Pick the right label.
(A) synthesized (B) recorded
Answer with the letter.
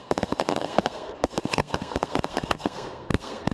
A